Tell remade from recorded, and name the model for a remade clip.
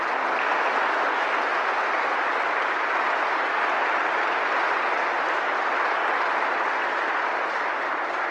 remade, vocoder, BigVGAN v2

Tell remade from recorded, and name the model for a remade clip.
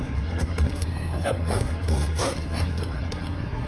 remade, codec, SNAC